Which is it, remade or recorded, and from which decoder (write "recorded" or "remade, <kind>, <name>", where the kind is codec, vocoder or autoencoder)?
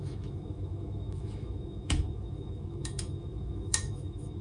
remade, autoencoder, DAC-VAE